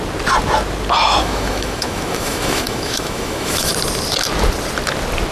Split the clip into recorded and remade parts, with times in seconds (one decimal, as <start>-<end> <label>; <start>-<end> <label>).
0.0-1.2 recorded; 1.2-3.7 remade; 3.7-5.3 recorded

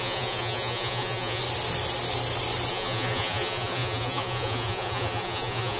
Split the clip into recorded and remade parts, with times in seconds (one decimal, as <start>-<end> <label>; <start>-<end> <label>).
0.0-1.4 remade; 1.4-2.7 recorded; 2.7-5.8 remade

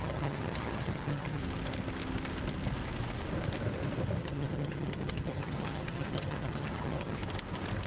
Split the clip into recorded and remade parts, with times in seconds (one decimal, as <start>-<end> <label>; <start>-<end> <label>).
0.0-1.4 remade; 1.4-4.2 recorded; 4.2-7.2 remade; 7.2-7.9 recorded

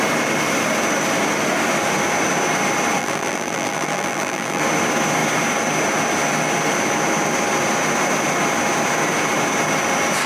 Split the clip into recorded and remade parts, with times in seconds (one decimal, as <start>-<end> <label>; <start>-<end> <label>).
0.0-3.0 recorded; 3.0-4.6 remade; 4.6-10.3 recorded

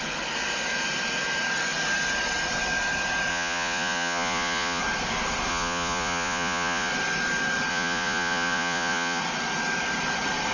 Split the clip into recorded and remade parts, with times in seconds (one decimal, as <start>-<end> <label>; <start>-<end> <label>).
0.0-3.3 recorded; 3.3-4.8 remade; 4.8-5.5 recorded; 5.5-6.9 remade; 6.9-7.7 recorded; 7.7-9.2 remade; 9.2-10.5 recorded

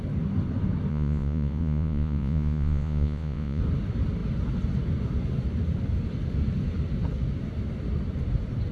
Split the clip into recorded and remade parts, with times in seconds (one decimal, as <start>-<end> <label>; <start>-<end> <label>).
0.0-0.9 recorded; 0.9-3.6 remade; 3.6-8.7 recorded

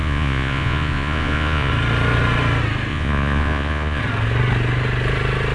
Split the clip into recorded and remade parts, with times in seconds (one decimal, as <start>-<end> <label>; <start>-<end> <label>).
0.0-1.7 remade; 1.7-2.9 recorded; 2.9-4.0 remade; 4.0-5.5 recorded